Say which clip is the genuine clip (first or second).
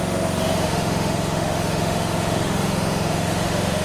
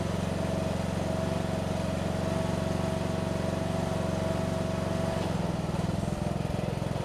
second